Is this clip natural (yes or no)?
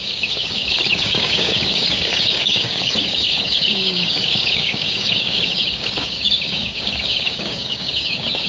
no